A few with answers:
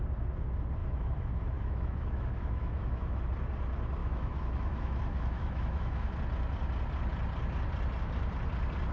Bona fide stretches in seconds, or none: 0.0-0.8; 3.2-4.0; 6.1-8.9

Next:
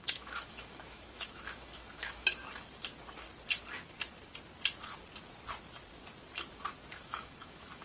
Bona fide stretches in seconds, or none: 2.4-7.0

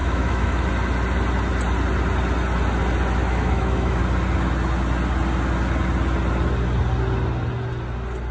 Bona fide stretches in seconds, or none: 0.7-3.2; 4.0-8.3